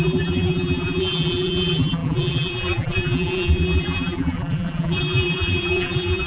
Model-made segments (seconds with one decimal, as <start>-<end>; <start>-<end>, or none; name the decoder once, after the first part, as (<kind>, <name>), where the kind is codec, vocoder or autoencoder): 0.0-6.3 (vocoder, BigVGAN v2)